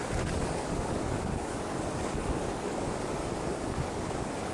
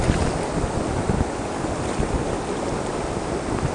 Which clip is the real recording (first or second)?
second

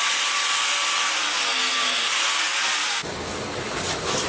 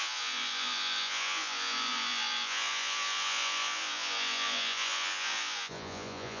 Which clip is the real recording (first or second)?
first